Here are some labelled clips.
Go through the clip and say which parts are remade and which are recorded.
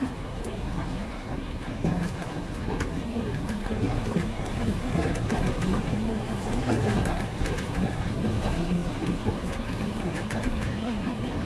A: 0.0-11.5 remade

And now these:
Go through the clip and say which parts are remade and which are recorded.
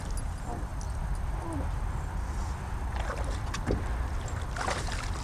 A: 0.0-5.2 recorded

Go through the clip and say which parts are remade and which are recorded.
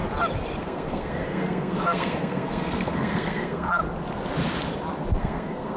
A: 0.0-0.6 recorded; 0.6-3.8 remade; 3.8-5.2 recorded; 5.2-5.8 remade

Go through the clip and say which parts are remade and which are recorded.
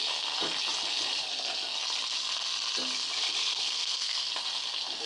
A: 0.0-3.4 recorded; 3.4-4.3 remade; 4.3-5.1 recorded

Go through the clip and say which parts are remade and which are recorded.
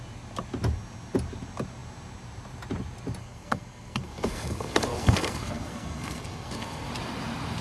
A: 0.0-3.2 recorded; 3.2-6.9 remade; 6.9-7.6 recorded